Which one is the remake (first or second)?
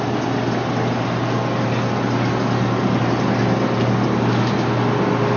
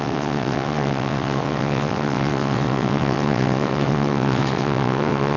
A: second